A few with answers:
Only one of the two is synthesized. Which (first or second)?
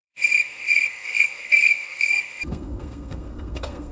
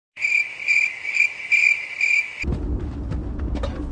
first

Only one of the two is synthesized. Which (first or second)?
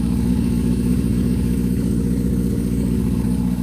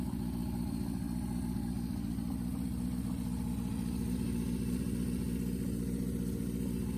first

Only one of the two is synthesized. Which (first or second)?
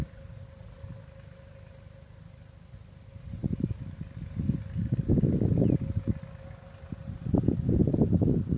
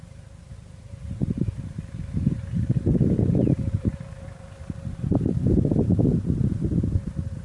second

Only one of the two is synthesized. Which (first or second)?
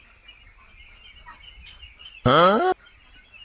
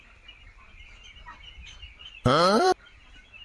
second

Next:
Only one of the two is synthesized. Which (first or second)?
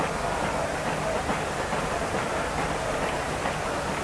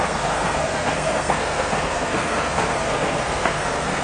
second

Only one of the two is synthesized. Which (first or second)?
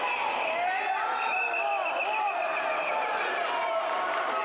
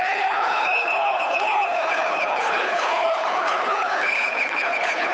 second